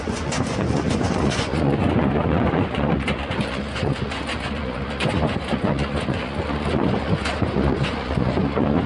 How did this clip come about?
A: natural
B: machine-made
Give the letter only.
B